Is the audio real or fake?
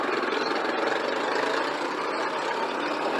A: real